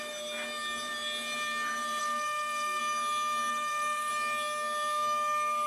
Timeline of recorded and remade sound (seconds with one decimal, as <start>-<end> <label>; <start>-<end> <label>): 0.0-2.0 recorded; 2.0-2.8 remade; 2.8-3.5 recorded; 3.5-4.1 remade; 4.1-5.7 recorded